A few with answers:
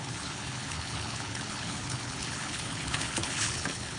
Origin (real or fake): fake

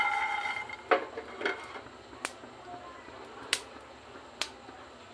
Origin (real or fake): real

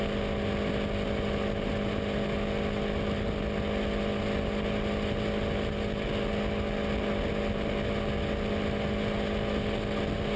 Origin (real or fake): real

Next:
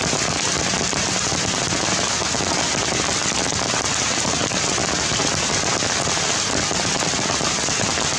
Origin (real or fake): real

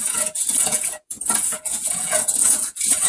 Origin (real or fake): fake